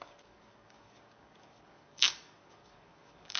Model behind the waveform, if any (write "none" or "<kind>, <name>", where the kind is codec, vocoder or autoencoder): codec, DAC